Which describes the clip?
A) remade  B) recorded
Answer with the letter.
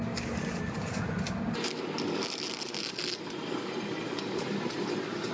B